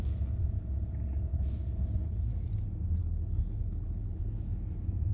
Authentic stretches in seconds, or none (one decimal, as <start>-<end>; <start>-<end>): 0.0-1.3; 2.3-3.0; 4.4-5.1